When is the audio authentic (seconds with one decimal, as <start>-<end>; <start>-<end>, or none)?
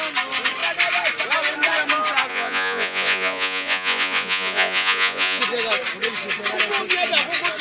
0.0-2.3; 5.4-7.6